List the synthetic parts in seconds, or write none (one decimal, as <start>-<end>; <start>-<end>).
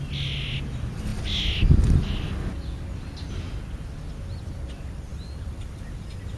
5.1-5.8